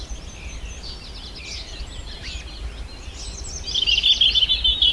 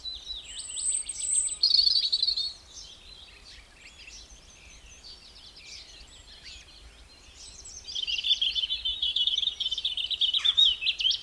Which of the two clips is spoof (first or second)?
second